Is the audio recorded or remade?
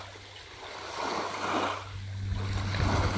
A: recorded